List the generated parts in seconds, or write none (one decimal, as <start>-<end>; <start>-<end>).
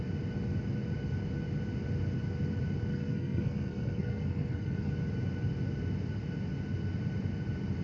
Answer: 2.9-4.9